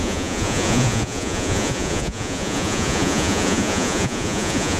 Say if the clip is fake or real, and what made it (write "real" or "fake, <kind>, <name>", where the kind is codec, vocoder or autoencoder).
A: fake, vocoder, Vocos